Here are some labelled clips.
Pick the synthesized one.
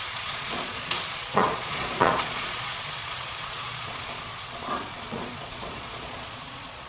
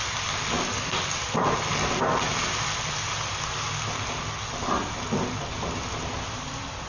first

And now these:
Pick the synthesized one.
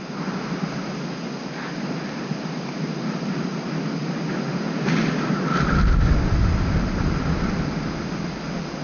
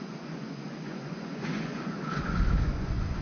second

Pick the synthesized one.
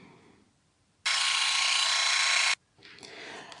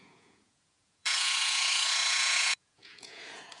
second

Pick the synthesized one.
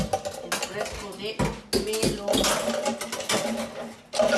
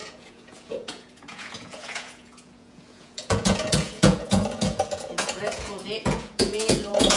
second